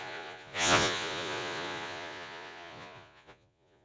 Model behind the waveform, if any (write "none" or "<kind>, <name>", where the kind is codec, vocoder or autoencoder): vocoder, Vocos